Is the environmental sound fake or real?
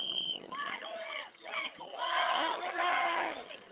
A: fake